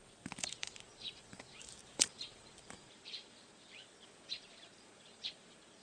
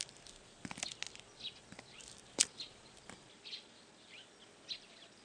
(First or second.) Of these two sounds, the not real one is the first